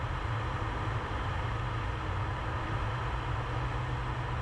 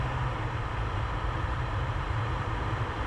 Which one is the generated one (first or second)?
second